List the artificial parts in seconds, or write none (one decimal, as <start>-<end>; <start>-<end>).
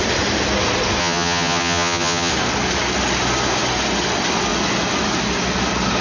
1.0-2.3